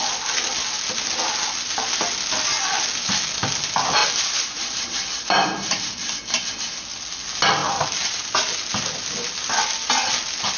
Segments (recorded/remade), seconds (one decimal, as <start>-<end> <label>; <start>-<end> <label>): 0.0-4.0 recorded; 4.0-6.1 remade; 6.1-7.6 recorded; 7.6-8.3 remade; 8.3-10.6 recorded